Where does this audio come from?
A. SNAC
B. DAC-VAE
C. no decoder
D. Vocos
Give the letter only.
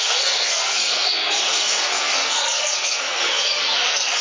A